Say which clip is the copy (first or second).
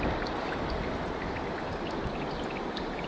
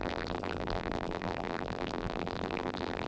second